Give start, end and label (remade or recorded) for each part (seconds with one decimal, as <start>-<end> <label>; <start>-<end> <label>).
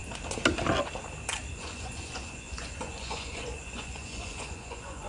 0.0-1.5 recorded; 1.5-5.1 remade